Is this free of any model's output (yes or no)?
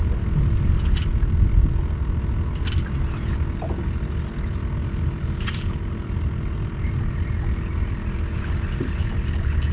yes